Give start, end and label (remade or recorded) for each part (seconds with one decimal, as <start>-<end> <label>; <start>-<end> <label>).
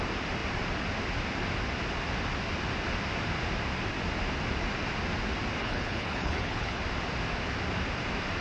0.0-5.6 recorded; 5.6-6.8 remade; 6.8-8.4 recorded